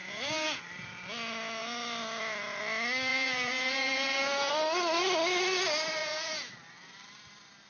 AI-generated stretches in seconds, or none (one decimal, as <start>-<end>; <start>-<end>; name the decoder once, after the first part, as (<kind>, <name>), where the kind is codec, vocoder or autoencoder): 0.0-0.6 (vocoder, Vocos); 3.1-4.5; 6.0-6.5